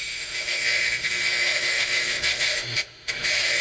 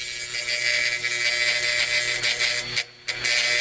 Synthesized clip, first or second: first